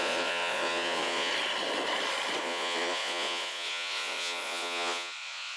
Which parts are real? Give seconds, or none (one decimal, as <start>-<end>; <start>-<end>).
1.3-2.4